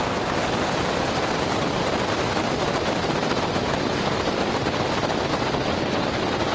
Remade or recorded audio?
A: recorded